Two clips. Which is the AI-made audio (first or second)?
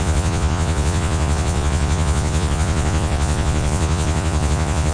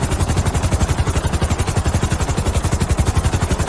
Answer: first